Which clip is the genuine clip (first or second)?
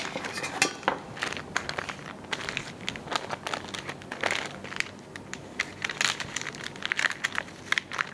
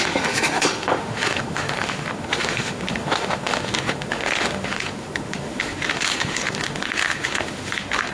first